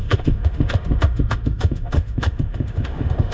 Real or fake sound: fake